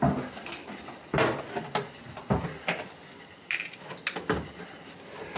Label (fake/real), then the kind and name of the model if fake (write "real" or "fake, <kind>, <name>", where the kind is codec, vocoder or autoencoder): real